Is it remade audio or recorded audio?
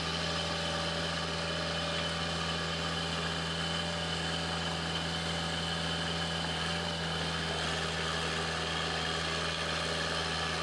recorded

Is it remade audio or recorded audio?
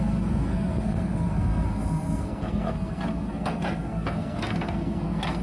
remade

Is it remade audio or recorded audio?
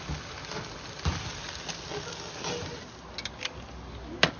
recorded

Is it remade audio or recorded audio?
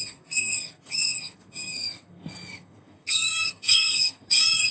remade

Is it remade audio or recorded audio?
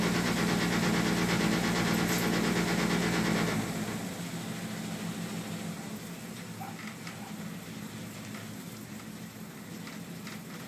recorded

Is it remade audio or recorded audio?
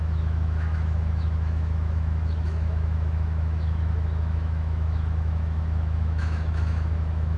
remade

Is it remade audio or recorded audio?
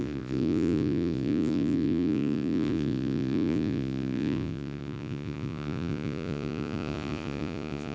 remade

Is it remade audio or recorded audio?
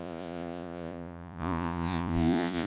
remade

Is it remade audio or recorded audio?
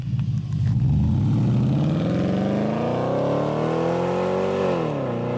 recorded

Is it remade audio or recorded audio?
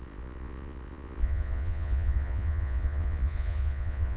remade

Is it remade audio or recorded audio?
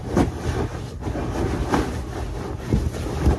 recorded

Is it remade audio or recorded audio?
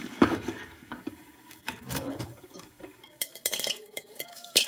remade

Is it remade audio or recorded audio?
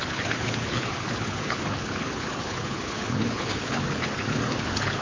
remade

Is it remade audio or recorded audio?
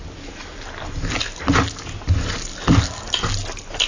recorded